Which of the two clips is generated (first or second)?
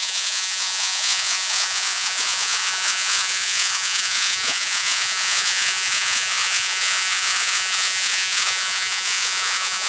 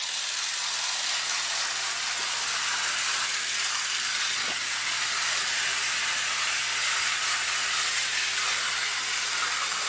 first